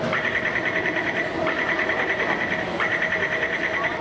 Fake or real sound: real